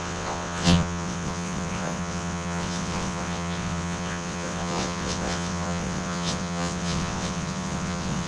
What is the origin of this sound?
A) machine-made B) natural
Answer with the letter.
A